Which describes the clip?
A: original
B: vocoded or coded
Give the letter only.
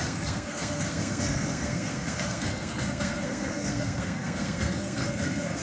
B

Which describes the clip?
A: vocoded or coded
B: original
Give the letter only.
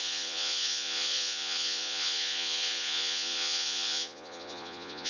A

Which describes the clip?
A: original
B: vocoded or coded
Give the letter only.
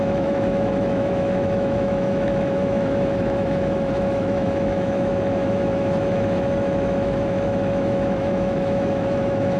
B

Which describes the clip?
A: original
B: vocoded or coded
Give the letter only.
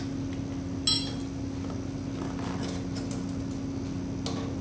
A